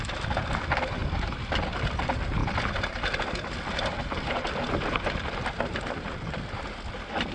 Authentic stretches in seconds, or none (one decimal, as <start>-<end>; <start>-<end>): 0.0-1.0; 1.8-2.4; 6.4-7.3